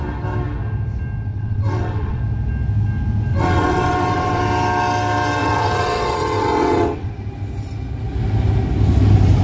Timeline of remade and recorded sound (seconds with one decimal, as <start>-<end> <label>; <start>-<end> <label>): 0.0-1.3 recorded; 1.3-2.2 remade; 2.2-3.3 recorded; 3.3-4.4 remade; 4.4-5.4 recorded; 5.4-7.1 remade; 7.1-9.4 recorded